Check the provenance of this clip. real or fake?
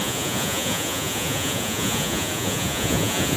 fake